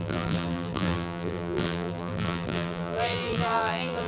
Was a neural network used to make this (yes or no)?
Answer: yes